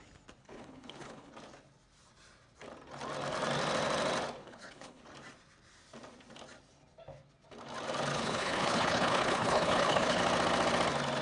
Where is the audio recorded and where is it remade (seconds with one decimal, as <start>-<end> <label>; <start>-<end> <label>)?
0.0-0.4 recorded; 0.4-1.3 remade; 1.3-4.4 recorded; 4.4-5.0 remade; 5.0-8.1 recorded; 8.1-10.2 remade; 10.2-11.2 recorded